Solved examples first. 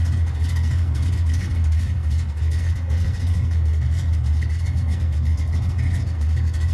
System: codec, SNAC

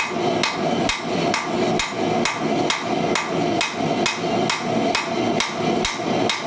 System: none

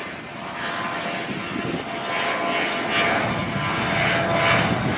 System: none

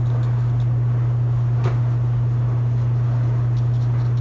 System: none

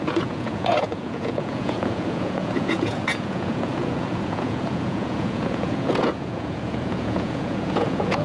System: vocoder, Vocos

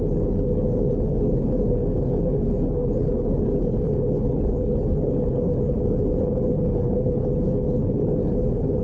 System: codec, HILCodec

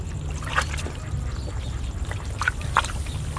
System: none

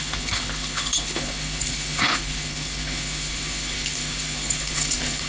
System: codec, HILCodec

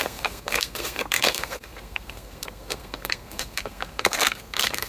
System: codec, SNAC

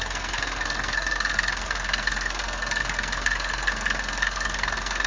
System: codec, SNAC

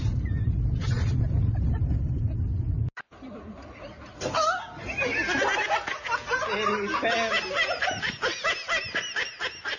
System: none